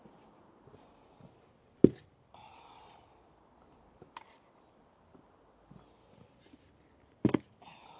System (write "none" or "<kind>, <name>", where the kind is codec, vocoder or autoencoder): none